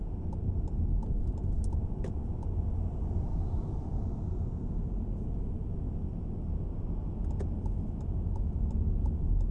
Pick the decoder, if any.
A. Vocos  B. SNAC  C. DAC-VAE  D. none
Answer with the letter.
D